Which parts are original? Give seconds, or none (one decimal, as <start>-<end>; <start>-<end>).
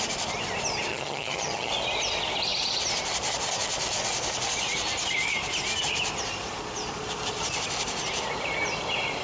0.0-0.9; 1.7-9.2